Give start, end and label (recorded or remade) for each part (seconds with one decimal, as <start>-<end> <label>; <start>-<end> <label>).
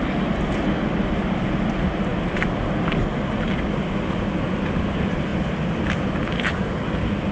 0.0-7.3 recorded